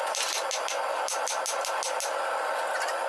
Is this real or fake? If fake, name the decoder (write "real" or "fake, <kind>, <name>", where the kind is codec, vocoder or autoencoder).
real